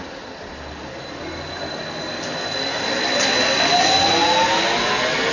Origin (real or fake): real